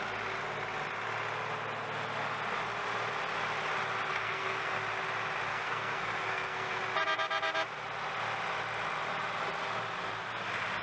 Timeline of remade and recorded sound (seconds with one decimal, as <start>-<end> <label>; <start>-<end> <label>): 0.0-4.1 recorded; 4.1-4.8 remade; 4.8-5.5 recorded; 5.5-6.8 remade; 6.8-10.8 recorded